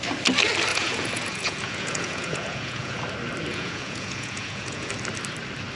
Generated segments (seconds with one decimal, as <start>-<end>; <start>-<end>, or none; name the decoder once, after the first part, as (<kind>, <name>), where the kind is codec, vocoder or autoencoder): 0.7-3.0 (vocoder, Vocos); 3.5-4.9